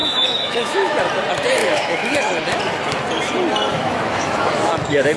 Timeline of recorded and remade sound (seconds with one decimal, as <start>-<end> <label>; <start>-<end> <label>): 0.0-1.0 remade; 1.0-1.6 recorded; 1.6-2.3 remade; 2.3-3.7 recorded; 3.7-5.2 remade